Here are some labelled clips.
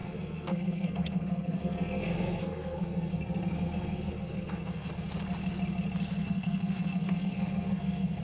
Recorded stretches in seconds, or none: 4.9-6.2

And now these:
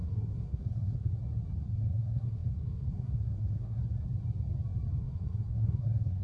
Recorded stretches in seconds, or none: 1.1-1.8; 3.8-5.0

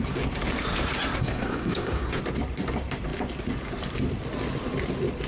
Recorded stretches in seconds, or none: 0.0-1.2; 2.2-5.3